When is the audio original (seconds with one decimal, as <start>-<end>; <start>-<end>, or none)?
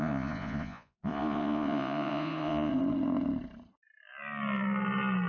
2.7-5.3